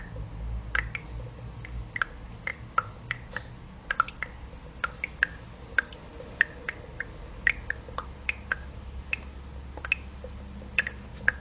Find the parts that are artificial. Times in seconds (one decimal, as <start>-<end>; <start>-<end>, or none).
none